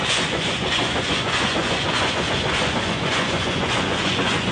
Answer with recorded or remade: remade